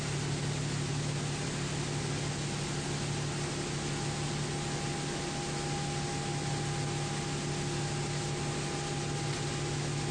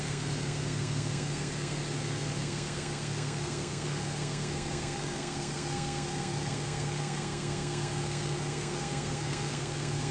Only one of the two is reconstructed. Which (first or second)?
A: second